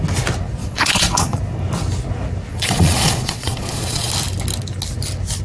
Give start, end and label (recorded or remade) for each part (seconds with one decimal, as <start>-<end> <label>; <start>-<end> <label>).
0.0-0.6 recorded; 0.6-1.4 remade; 1.4-2.5 recorded; 2.5-4.1 remade; 4.1-5.4 recorded